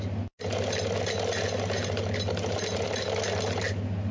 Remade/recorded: recorded